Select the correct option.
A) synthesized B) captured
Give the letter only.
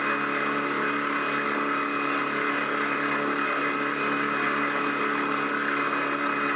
B